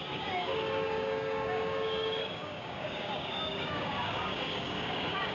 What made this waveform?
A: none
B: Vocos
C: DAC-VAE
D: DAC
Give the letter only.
D